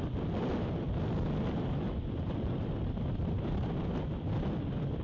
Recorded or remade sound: recorded